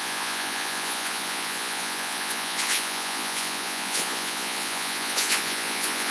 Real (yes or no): no